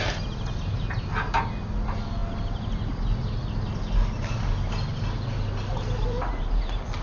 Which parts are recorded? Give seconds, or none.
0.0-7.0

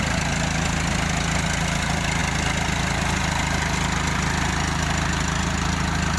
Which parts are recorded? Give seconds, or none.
0.0-6.2

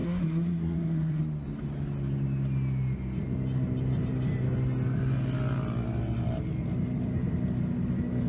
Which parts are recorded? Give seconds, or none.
1.2-8.3

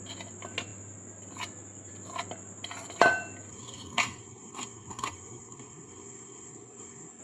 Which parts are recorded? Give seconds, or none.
0.0-3.5

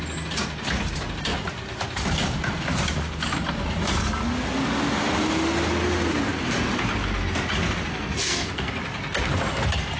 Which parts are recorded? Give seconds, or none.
0.0-7.9; 8.7-10.0

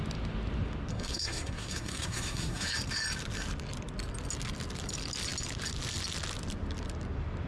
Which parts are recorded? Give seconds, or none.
0.0-0.9; 2.7-7.5

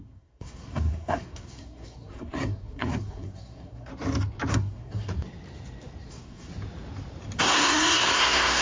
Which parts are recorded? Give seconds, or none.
3.9-4.5; 5.1-6.1; 6.5-7.4